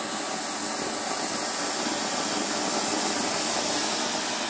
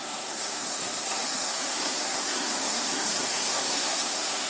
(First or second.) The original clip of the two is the first